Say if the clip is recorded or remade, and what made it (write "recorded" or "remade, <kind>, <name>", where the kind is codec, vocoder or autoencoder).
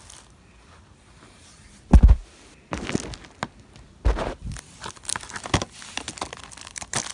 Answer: recorded